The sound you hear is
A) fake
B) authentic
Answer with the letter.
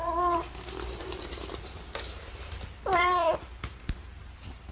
A